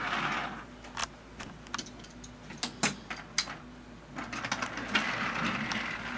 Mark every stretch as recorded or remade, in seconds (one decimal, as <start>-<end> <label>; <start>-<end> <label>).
0.0-6.2 recorded